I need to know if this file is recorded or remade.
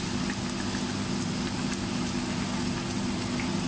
recorded